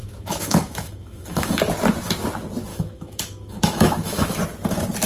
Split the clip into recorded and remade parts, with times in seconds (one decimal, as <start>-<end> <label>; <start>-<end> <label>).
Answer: 0.0-1.6 remade; 1.6-2.7 recorded; 2.7-4.4 remade; 4.4-5.1 recorded